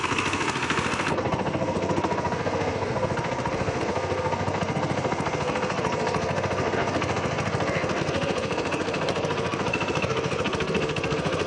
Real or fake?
fake